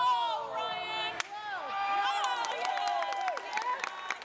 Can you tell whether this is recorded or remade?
recorded